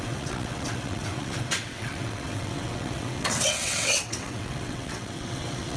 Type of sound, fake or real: fake